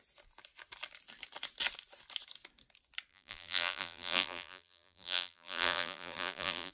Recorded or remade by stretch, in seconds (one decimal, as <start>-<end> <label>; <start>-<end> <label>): 0.0-3.1 recorded; 3.1-6.7 remade